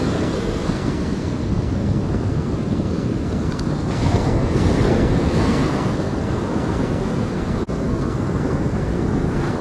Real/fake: fake